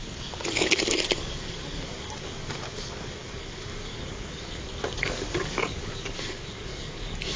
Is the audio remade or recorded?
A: remade